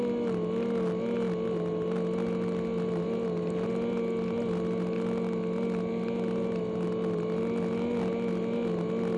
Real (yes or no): yes